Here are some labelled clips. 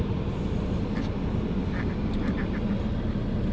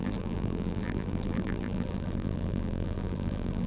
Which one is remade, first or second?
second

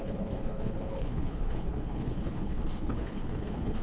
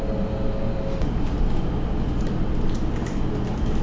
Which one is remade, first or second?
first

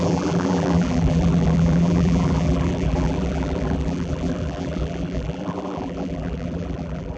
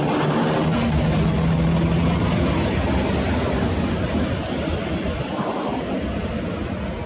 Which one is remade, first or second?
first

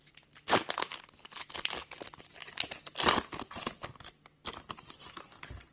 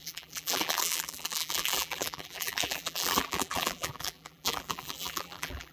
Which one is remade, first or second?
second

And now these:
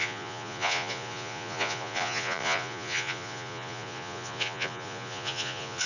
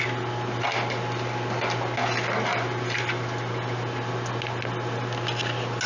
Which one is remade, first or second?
first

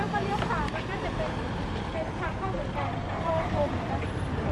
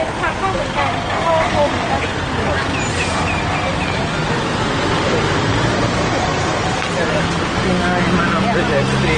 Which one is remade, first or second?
first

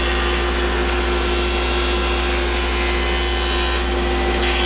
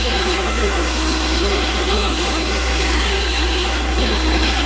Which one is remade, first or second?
second